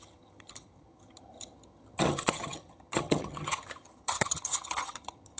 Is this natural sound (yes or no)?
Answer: no